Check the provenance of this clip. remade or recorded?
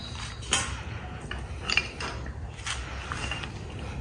recorded